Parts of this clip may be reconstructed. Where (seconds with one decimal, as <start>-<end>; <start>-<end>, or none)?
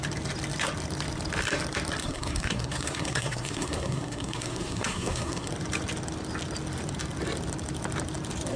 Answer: 2.0-5.5